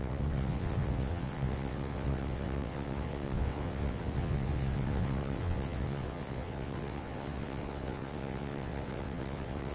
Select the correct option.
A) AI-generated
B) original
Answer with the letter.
A